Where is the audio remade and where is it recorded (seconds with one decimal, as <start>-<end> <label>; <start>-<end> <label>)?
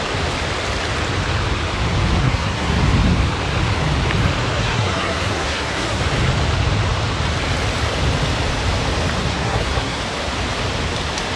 0.0-2.2 recorded; 2.2-2.8 remade; 2.8-4.6 recorded; 4.6-6.0 remade; 6.0-9.3 recorded; 9.3-10.0 remade; 10.0-11.4 recorded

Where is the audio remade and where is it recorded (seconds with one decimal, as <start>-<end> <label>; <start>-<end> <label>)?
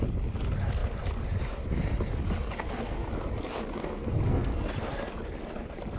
0.0-2.6 recorded; 2.6-3.1 remade; 3.1-3.8 recorded; 3.8-4.7 remade; 4.7-6.0 recorded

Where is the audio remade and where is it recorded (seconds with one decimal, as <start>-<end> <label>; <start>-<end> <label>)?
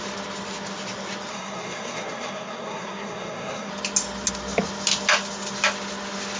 0.0-1.3 recorded; 1.3-3.7 remade; 3.7-6.4 recorded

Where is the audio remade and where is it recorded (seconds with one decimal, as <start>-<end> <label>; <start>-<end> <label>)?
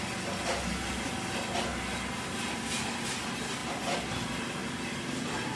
0.0-5.6 recorded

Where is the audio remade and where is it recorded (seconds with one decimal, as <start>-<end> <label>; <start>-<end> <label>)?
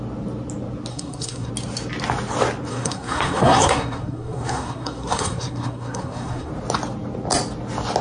0.0-0.9 recorded; 0.9-1.5 remade; 1.5-2.7 recorded; 2.7-6.5 remade; 6.5-8.0 recorded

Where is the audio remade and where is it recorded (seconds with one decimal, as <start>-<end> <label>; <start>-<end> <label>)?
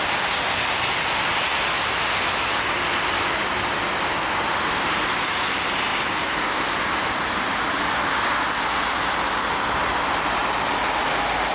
0.0-11.5 recorded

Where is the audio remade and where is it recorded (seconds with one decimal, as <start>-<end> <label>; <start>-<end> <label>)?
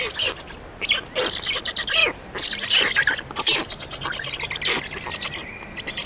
0.0-6.1 recorded